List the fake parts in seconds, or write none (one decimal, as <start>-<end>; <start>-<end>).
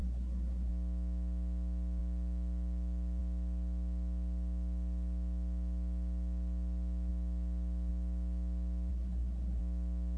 0.0-0.7; 8.9-9.6